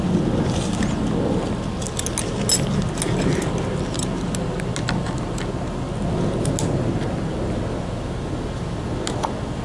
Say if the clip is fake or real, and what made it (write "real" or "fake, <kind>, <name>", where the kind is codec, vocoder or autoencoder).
real